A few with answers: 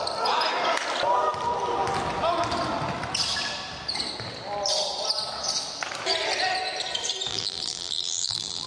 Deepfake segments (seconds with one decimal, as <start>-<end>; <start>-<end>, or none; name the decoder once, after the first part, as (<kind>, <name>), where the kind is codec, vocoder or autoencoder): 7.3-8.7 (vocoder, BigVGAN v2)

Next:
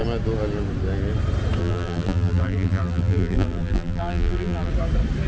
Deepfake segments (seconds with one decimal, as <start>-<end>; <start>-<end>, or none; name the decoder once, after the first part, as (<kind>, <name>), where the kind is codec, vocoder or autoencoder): 1.6-4.7 (vocoder, BigVGAN v2)

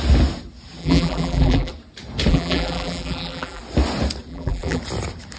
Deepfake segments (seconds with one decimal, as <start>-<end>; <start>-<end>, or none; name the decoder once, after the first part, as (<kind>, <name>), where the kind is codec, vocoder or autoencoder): 0.8-1.7 (vocoder, BigVGAN v2); 2.3-3.6; 4.3-4.8

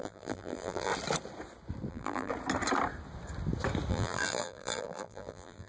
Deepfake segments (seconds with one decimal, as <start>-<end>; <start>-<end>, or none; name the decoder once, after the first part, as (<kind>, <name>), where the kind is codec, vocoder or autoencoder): 0.0-0.9 (vocoder, BigVGAN v2); 1.9-2.3; 3.9-5.7

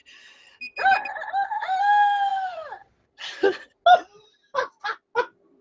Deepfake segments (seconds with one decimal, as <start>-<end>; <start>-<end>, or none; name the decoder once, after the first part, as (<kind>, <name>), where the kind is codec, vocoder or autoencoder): 2.3-3.6 (vocoder, BigVGAN v2)

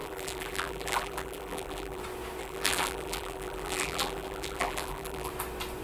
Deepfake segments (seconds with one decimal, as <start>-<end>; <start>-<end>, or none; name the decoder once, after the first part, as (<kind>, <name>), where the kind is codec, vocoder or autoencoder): 0.0-2.0 (vocoder, BigVGAN v2); 2.4-5.3